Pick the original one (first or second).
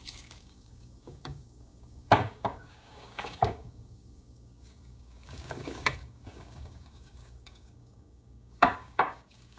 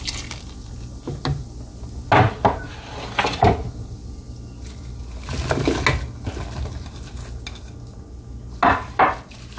second